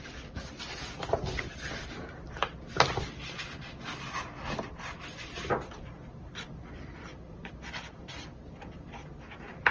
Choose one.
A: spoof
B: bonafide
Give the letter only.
B